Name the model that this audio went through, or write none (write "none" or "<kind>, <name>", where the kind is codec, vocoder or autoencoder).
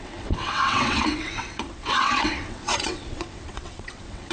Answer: vocoder, WaveNeXt